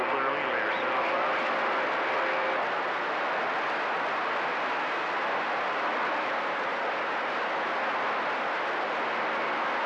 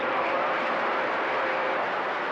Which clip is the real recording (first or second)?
first